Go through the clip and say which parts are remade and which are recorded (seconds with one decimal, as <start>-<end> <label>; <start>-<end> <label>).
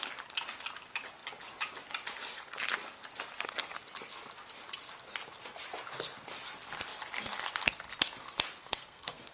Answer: 0.0-8.6 recorded; 8.6-9.3 remade